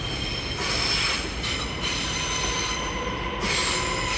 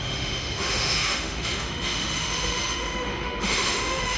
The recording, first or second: first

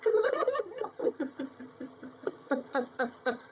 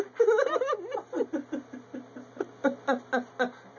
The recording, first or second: second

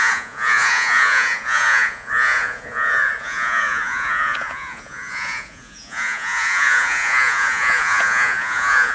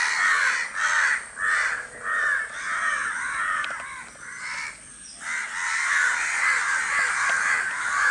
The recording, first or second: second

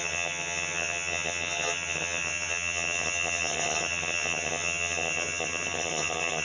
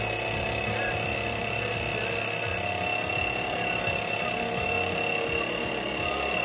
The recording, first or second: second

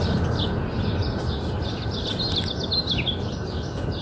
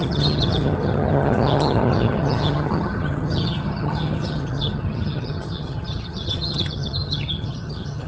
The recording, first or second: first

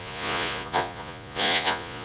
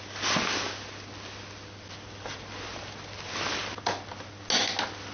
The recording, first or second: second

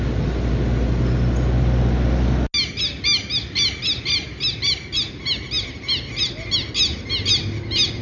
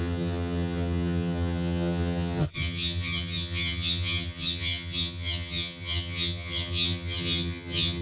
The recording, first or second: first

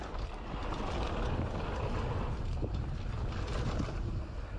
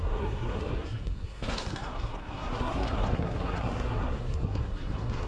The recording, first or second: first